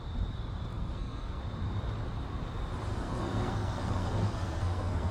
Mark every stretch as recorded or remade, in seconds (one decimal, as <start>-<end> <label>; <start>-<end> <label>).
0.0-0.7 recorded; 0.7-1.4 remade; 1.4-2.9 recorded; 2.9-5.1 remade